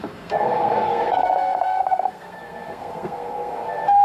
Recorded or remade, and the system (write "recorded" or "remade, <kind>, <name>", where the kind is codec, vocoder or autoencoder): remade, codec, SNAC